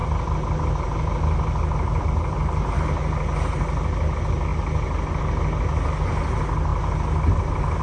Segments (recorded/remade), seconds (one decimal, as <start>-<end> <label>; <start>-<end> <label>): 0.0-7.8 recorded